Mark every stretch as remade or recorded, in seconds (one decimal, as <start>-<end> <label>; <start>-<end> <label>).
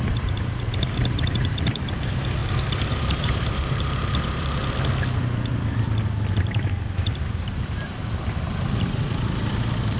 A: 0.0-2.4 remade; 2.4-3.0 recorded; 3.0-4.6 remade; 4.6-6.4 recorded; 6.4-10.0 remade